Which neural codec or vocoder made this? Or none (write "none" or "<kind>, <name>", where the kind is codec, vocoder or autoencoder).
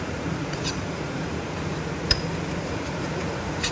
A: vocoder, Vocos